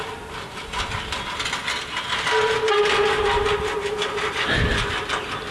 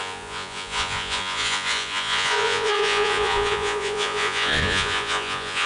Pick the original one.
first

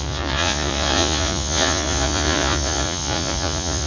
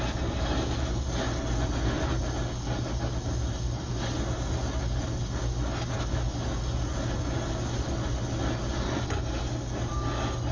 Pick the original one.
second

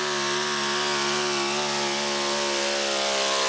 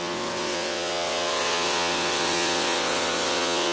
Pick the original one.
first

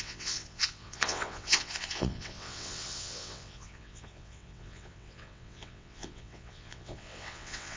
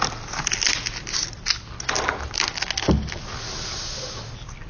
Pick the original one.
second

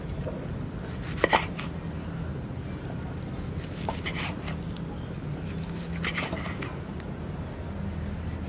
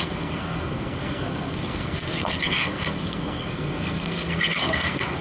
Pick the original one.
first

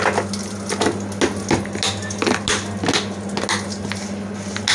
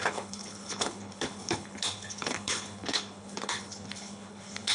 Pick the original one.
first